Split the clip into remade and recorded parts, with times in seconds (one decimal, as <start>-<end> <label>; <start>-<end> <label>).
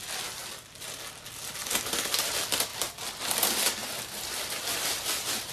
0.0-1.6 recorded; 1.6-2.3 remade; 2.3-3.8 recorded; 3.8-5.5 remade